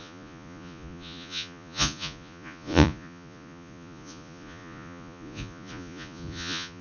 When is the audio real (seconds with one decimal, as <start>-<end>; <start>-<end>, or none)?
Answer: none

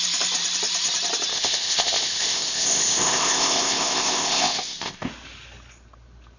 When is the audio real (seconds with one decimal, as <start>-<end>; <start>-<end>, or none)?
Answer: 0.0-1.3; 5.1-6.4

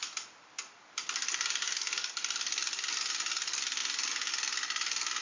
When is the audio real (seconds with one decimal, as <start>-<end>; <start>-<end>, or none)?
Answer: 3.0-5.2

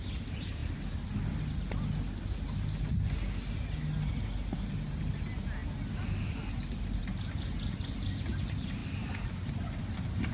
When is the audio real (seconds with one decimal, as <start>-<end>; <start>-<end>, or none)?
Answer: 0.0-10.3

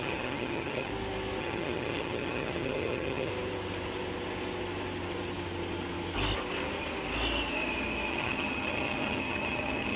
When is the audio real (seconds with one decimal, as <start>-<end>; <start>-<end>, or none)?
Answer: 0.9-1.4; 3.3-8.1